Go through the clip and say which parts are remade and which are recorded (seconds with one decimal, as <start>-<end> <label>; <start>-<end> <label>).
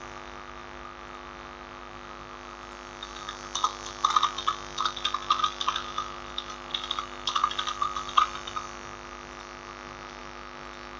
0.0-11.0 recorded